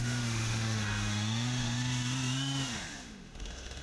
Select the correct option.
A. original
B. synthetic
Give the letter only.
B